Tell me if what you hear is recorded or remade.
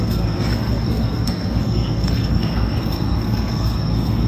remade